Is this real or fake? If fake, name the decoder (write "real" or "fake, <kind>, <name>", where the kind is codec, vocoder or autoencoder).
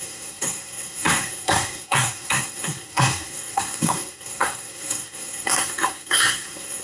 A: fake, codec, SNAC